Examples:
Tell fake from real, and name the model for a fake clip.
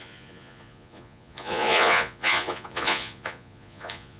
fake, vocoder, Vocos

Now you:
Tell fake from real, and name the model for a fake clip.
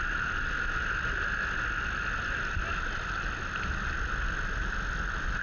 real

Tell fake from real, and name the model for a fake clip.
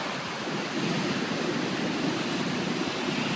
real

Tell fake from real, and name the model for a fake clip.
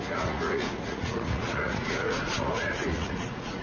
fake, vocoder, Vocos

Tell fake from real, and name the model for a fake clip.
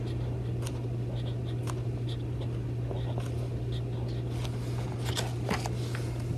real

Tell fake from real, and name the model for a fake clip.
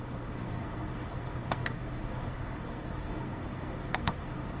fake, codec, SNAC